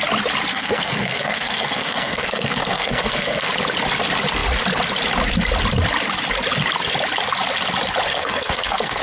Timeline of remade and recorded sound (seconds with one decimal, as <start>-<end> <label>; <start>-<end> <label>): 0.0-0.5 recorded; 0.5-3.5 remade; 3.5-8.1 recorded; 8.1-9.0 remade